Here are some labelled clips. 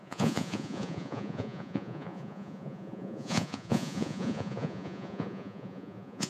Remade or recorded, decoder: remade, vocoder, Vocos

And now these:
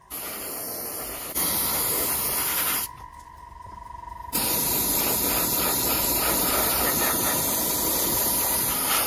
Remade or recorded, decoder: remade, vocoder, BigVGAN v2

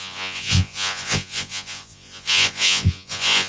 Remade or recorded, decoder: remade, vocoder, Vocos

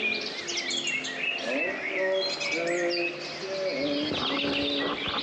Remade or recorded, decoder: recorded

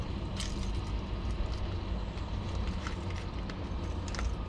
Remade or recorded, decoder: recorded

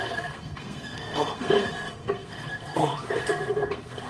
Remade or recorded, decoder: remade, codec, SNAC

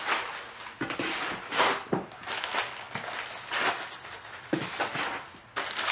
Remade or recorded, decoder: recorded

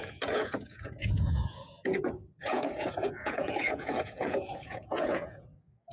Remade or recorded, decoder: remade, vocoder, Vocos